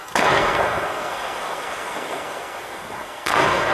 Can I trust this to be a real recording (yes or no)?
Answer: no